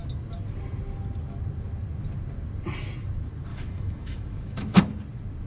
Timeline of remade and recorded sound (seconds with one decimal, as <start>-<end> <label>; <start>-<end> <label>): 0.0-3.5 recorded; 3.5-4.8 remade; 4.8-5.5 recorded